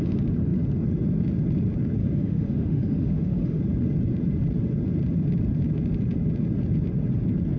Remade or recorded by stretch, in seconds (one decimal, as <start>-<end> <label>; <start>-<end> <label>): 0.0-2.0 recorded; 2.0-3.6 remade; 3.6-7.6 recorded